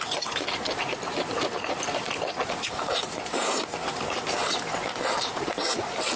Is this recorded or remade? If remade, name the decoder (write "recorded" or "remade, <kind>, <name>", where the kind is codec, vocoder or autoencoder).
remade, vocoder, BigVGAN v2